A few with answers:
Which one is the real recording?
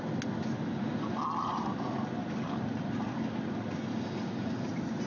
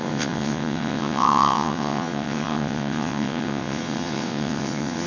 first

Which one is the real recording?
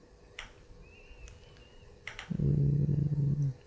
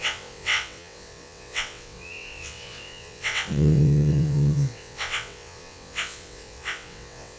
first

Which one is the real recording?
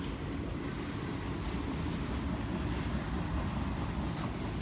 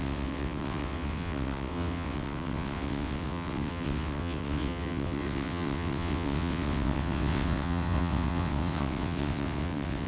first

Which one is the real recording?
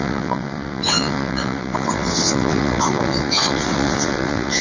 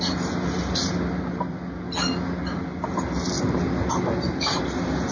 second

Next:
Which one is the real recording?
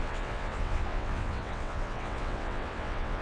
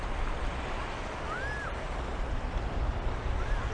second